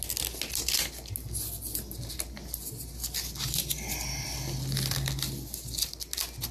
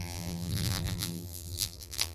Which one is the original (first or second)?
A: first